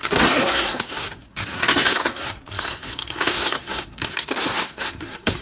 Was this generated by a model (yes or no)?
yes